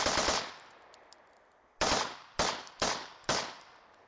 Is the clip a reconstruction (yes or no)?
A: no